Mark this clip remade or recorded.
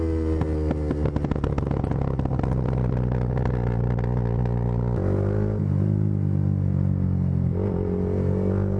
recorded